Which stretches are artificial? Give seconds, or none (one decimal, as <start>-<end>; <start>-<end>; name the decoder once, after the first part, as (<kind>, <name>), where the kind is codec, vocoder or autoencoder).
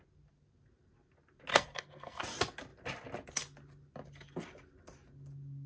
1.5-2.2 (codec, SNAC)